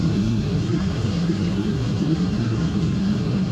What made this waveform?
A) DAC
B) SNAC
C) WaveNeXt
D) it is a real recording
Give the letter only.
B